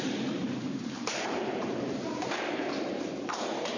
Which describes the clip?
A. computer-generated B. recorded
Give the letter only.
A